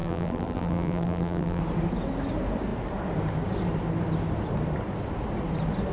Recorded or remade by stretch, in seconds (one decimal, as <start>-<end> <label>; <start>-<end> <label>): 0.0-1.6 remade; 1.6-5.9 recorded